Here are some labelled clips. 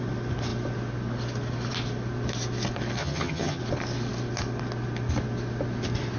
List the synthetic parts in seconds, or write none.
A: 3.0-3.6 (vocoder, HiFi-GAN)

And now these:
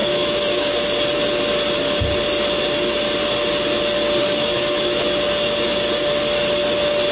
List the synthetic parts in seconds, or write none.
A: 0.0-0.7 (autoencoder, DAC-VAE); 4.2-5.0

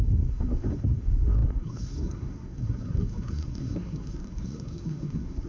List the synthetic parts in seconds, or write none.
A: 0.0-5.5 (codec, SNAC)

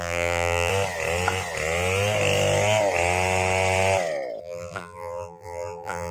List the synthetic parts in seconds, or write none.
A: 0.0-0.7 (vocoder, BigVGAN v2); 4.4-6.1

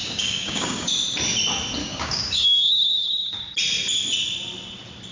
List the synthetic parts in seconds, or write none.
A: 0.0-0.9 (codec, DAC); 1.8-3.4

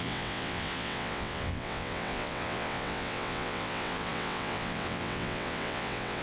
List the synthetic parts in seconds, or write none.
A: 0.0-6.2 (vocoder, WaveNeXt)

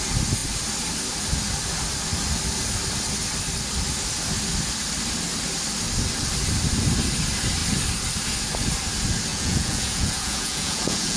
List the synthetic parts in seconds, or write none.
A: 9.3-11.2 (vocoder, Vocos)